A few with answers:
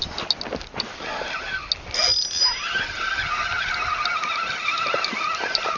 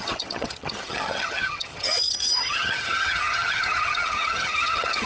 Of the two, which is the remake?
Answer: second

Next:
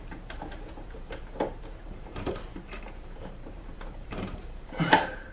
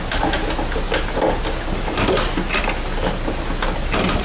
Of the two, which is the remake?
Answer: first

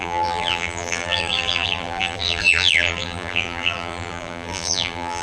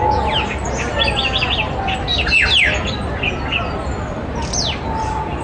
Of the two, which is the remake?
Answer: first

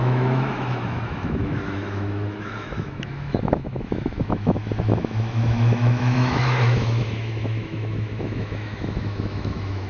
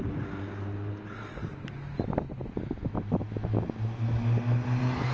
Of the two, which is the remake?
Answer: first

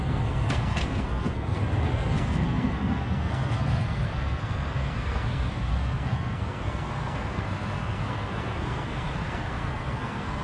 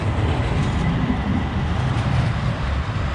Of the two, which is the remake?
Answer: first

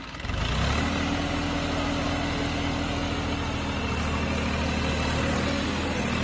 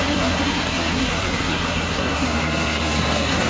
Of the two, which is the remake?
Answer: second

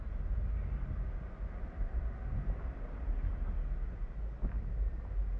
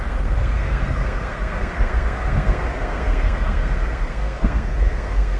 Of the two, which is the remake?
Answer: second